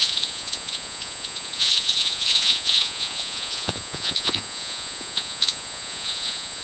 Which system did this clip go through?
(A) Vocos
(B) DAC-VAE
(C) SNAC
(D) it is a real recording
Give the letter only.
A